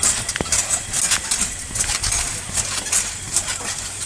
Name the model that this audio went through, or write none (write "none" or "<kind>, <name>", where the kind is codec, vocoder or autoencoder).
none